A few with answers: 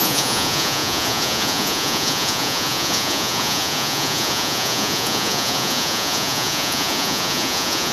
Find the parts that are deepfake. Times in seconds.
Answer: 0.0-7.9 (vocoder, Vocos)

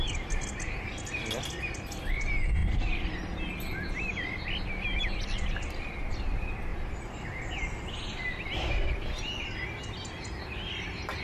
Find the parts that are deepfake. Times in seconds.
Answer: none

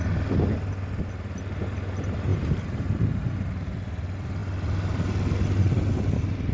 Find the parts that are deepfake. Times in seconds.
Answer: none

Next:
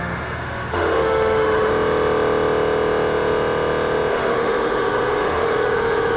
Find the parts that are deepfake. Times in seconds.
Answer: 0.0-1.7 (autoencoder, DAC-VAE); 4.1-6.2

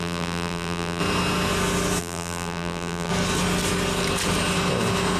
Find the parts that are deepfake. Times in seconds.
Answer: 0.0-1.0 (vocoder, BigVGAN v2); 2.0-3.1

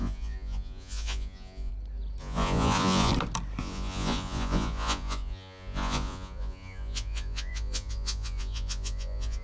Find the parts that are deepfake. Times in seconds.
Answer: 0.0-1.7 (vocoder, Vocos); 2.2-3.1; 3.6-9.4